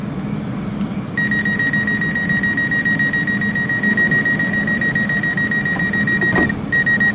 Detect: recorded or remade recorded